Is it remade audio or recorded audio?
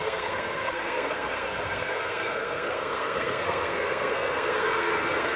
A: remade